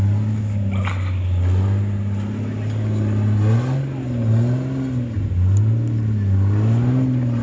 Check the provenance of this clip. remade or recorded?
recorded